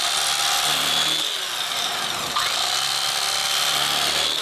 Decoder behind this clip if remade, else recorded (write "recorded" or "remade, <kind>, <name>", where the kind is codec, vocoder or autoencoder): recorded